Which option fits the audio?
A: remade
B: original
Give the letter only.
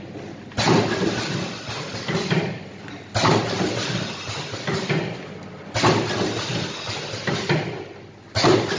B